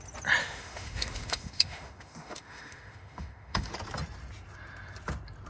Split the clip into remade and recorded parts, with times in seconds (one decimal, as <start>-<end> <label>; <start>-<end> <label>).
0.0-0.4 recorded; 0.4-3.7 remade; 3.7-5.5 recorded